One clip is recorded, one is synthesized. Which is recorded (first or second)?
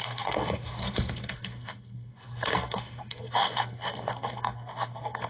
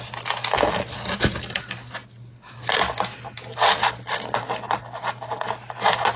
second